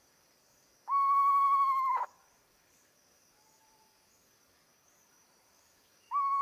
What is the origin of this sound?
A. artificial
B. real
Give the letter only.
A